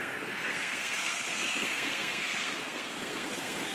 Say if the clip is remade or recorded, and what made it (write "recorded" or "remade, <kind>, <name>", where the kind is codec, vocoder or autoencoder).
remade, codec, SNAC